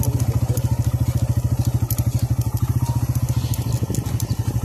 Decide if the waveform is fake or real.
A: real